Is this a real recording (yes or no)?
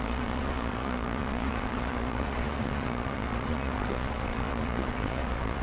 no